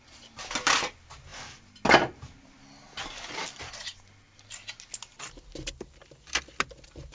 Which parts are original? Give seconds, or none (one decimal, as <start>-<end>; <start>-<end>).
0.0-7.1